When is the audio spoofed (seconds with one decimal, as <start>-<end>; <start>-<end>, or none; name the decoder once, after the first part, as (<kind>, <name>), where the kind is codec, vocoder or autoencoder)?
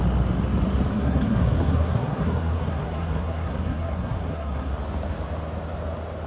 0.9-4.7 (codec, SNAC)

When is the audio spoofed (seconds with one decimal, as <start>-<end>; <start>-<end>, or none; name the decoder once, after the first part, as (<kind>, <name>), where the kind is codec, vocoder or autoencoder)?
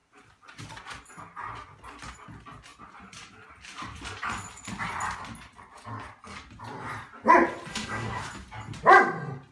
7.7-8.2 (codec, SNAC)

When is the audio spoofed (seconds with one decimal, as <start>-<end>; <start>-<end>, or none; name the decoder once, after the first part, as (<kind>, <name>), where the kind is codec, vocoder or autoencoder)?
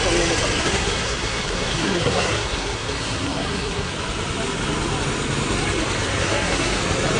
0.6-3.9 (codec, SNAC); 6.2-6.8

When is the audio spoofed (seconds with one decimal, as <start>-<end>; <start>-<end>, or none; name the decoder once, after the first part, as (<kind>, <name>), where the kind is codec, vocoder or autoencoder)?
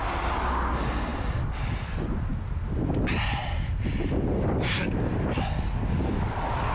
none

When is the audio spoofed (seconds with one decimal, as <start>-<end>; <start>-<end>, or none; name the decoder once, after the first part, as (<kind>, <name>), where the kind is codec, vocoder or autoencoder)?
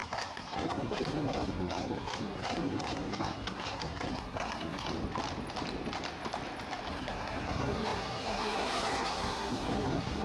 0.0-4.9 (codec, SNAC); 6.9-10.2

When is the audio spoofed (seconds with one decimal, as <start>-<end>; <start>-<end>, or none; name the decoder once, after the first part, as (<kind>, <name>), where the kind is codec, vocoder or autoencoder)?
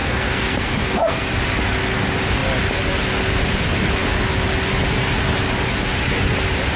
0.0-1.3 (codec, SNAC)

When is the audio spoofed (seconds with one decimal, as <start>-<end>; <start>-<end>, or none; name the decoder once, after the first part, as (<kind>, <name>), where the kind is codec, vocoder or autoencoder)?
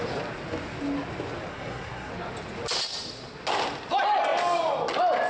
1.5-2.1 (codec, SNAC)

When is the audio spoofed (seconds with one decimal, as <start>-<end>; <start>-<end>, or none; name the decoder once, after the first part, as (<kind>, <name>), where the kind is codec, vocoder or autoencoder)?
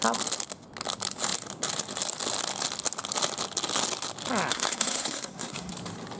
4.5-5.7 (codec, SNAC)